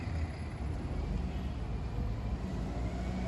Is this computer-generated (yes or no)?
no